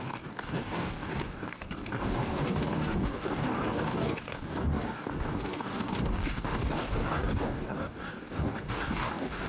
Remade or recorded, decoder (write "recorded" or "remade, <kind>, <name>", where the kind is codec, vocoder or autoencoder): remade, codec, DAC